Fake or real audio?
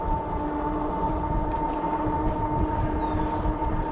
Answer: real